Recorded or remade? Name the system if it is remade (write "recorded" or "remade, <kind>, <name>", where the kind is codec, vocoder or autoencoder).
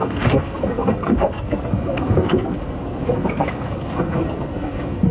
remade, codec, SNAC